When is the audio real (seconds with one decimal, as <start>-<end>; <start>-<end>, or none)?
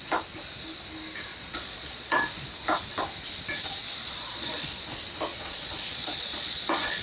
0.0-1.3; 2.2-4.0; 4.8-5.3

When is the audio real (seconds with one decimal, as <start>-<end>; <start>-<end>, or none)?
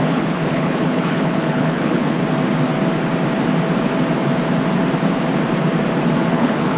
2.2-6.3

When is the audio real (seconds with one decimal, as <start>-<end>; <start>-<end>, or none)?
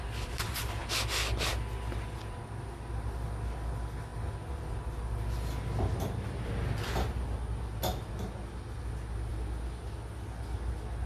0.0-11.1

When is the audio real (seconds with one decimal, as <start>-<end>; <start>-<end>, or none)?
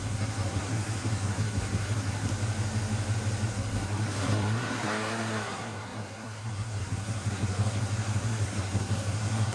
2.3-3.5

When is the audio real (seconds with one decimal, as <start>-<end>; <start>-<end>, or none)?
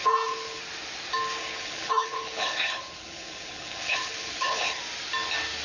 0.6-1.4; 4.8-5.6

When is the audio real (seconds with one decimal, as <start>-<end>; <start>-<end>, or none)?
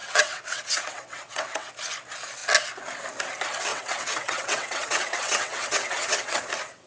1.7-3.7; 6.4-6.9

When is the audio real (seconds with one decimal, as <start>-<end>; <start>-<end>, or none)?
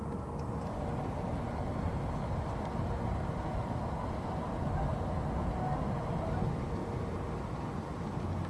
0.0-8.5